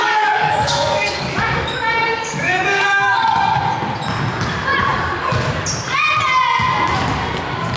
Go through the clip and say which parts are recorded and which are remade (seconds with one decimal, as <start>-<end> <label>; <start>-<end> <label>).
0.0-3.6 remade; 3.6-7.8 recorded